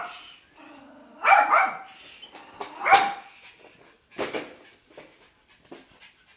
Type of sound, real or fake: real